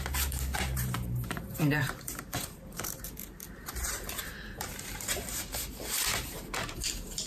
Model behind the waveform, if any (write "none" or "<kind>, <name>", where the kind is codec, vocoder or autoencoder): vocoder, BigVGAN v2